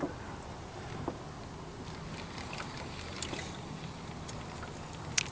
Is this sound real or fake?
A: real